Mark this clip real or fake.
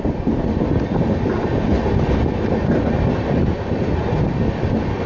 real